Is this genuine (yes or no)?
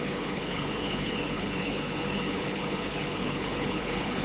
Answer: no